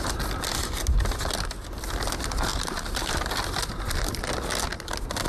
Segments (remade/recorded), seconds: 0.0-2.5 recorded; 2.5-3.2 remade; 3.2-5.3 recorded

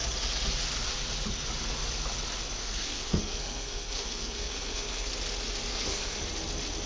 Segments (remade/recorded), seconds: 0.0-2.6 recorded; 2.6-5.1 remade; 5.1-5.7 recorded; 5.7-6.2 remade; 6.2-6.9 recorded

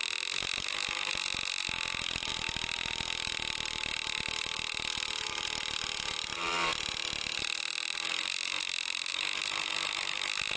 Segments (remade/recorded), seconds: 0.0-10.6 recorded

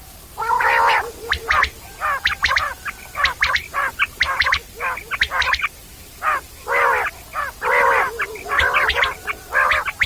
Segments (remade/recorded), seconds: 0.0-10.1 remade

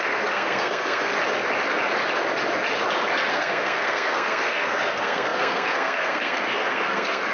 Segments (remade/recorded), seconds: 0.0-1.1 remade; 1.1-3.3 recorded; 3.3-7.3 remade